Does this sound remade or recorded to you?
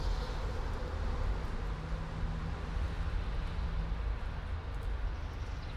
recorded